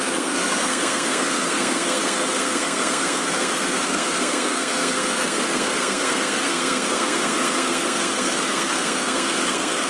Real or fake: fake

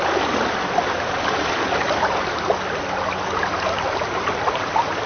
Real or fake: real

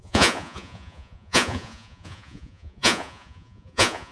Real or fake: fake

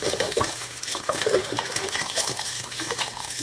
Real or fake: fake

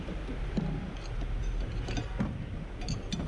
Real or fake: real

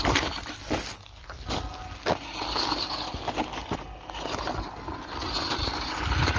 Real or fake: real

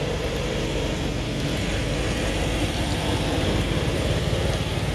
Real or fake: real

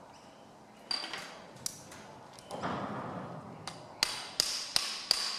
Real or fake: real